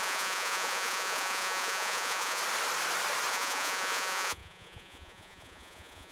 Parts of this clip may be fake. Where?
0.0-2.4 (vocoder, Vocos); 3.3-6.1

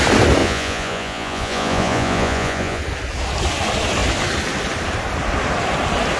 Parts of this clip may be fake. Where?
0.4-2.8 (vocoder, Vocos)

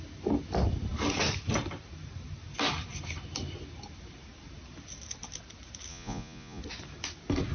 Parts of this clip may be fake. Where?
5.9-6.6 (vocoder, Vocos)

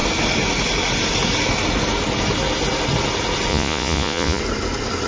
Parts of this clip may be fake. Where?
3.5-4.4 (vocoder, Vocos)